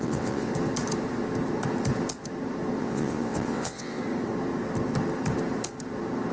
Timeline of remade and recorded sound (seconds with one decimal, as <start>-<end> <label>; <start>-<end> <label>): 0.0-0.5 remade; 0.5-2.8 recorded; 2.8-4.0 remade; 4.0-6.3 recorded